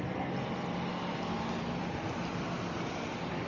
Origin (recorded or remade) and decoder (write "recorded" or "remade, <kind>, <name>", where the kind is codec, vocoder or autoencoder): recorded